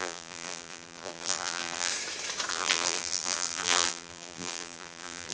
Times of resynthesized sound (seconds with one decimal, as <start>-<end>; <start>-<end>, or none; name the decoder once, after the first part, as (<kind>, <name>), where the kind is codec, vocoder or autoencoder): 0.0-1.9 (vocoder, BigVGAN v2); 2.5-5.3